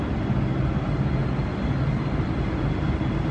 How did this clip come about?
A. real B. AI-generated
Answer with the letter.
A